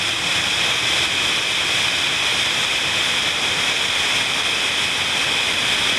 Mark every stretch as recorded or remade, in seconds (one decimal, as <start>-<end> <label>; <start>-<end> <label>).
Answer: 0.0-2.3 recorded; 2.3-4.7 remade; 4.7-6.0 recorded